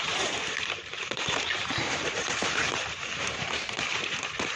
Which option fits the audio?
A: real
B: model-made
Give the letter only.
B